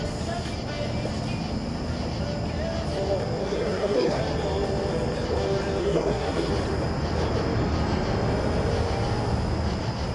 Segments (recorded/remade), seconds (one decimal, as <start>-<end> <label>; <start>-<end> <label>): 0.0-3.4 recorded; 3.4-4.2 remade; 4.2-5.8 recorded; 5.8-6.5 remade; 6.5-10.1 recorded